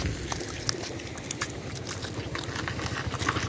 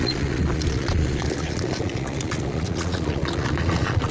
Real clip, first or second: first